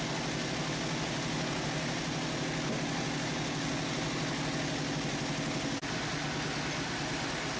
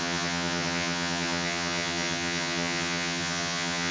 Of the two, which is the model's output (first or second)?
second